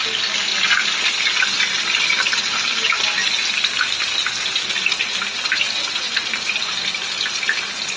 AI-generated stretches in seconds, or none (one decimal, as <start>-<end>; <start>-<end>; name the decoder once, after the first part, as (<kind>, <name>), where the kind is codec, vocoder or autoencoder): none